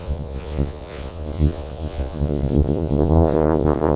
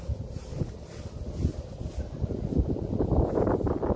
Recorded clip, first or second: second